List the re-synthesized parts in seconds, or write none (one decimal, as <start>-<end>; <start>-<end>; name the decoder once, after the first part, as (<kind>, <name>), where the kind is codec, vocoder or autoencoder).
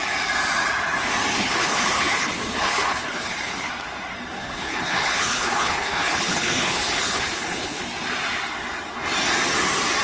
1.3-3.7 (codec, HILCodec); 4.4-7.8